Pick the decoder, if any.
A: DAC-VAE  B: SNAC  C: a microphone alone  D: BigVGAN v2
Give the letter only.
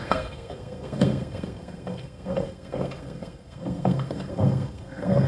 B